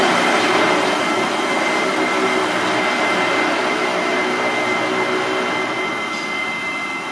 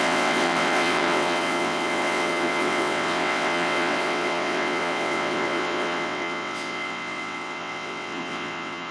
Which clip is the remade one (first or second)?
second